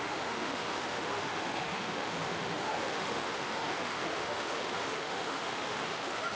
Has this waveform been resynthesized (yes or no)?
yes